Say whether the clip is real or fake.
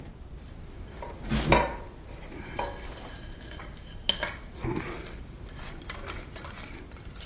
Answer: real